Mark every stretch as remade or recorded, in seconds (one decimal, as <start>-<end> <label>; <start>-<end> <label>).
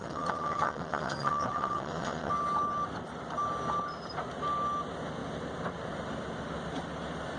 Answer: 0.0-2.3 remade; 2.3-7.4 recorded